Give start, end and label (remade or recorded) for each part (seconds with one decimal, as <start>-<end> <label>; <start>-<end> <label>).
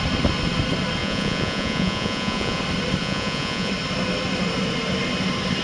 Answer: 0.0-1.0 recorded; 1.0-2.6 remade; 2.6-3.0 recorded; 3.0-3.7 remade; 3.7-5.6 recorded